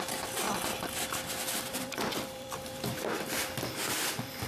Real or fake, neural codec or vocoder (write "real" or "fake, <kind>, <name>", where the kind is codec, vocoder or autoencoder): fake, vocoder, BigVGAN v2